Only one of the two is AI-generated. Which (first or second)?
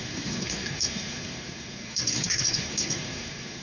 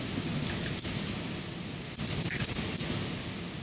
first